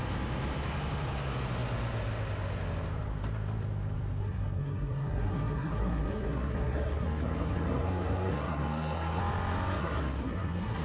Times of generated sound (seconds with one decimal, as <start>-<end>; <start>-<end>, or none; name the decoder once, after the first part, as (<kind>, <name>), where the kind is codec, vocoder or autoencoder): 4.2-9.2 (codec, SNAC); 9.8-10.8